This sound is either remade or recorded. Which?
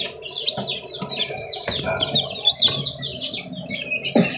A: recorded